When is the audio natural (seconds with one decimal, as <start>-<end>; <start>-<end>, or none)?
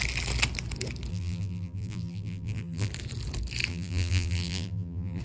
0.0-1.1; 2.9-3.7